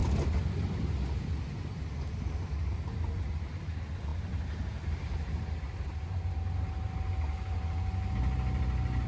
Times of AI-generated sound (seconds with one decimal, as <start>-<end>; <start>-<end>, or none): none